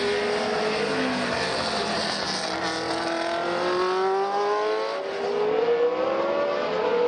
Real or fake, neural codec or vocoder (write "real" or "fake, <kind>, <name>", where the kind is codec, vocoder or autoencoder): real